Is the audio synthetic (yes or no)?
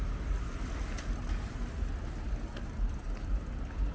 no